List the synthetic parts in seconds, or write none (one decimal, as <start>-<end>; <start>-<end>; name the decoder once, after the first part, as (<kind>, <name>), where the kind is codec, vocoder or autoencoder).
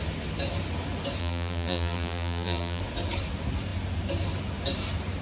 1.2-2.8 (vocoder, BigVGAN v2)